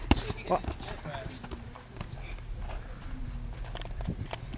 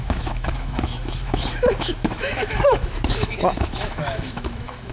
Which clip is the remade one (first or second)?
second